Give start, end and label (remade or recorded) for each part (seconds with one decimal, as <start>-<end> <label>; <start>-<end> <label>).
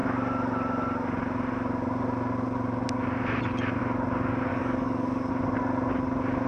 0.0-4.5 recorded; 4.5-5.3 remade; 5.3-6.5 recorded